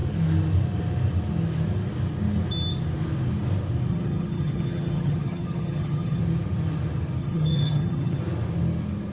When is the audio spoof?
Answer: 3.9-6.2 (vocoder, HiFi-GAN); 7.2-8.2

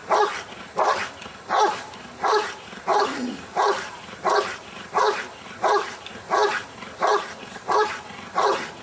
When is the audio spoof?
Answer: 0.0-8.8 (vocoder, BigVGAN v2)

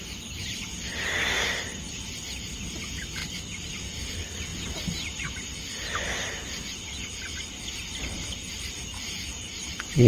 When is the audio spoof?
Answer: 3.2-4.1 (vocoder, BigVGAN v2); 4.5-5.1; 8.0-10.1

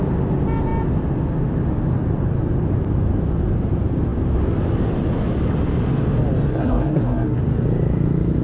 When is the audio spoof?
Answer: 6.5-7.4 (codec, SNAC)

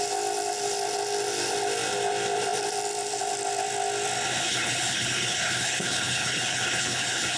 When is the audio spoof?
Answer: 4.4-7.4 (codec, HILCodec)

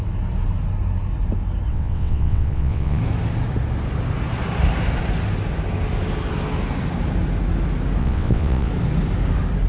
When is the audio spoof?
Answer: 1.7-3.0 (vocoder, WaveNeXt); 8.0-8.7

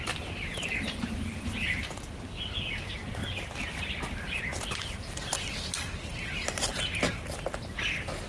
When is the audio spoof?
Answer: 4.5-5.5 (vocoder, BigVGAN v2)

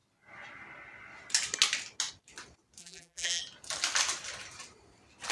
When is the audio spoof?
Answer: 2.8-3.4 (vocoder, BigVGAN v2)